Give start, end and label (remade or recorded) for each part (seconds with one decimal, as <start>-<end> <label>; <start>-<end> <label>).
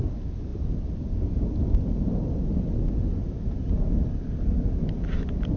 0.0-5.6 recorded